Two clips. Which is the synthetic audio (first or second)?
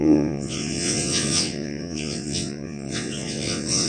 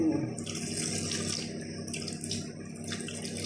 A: first